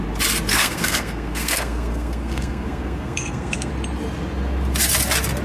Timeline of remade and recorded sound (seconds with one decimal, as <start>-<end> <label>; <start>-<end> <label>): 0.0-0.5 recorded; 0.5-3.7 remade; 3.7-5.4 recorded